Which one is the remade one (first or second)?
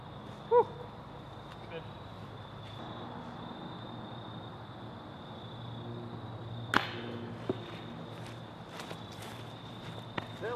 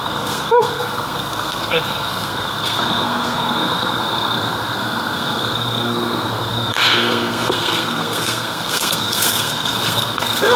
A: second